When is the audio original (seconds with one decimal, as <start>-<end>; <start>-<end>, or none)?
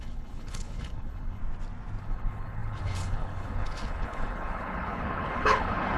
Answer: 1.4-2.0